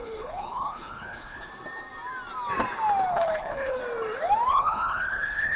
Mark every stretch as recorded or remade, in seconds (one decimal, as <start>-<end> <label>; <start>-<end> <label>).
0.0-1.5 remade; 1.5-3.1 recorded; 3.1-3.8 remade; 3.8-4.5 recorded; 4.5-5.6 remade